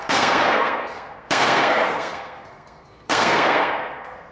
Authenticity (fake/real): fake